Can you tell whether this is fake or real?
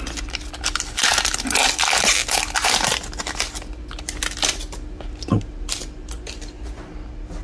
real